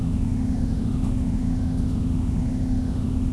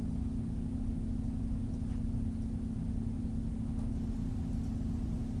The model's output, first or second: first